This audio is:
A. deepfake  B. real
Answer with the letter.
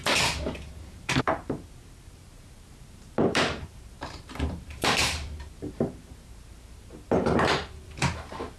A